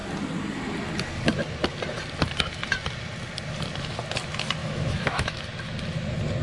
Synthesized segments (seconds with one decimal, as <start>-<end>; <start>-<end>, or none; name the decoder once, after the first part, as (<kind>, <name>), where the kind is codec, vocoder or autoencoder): 4.6-5.4 (autoencoder, DAC-VAE)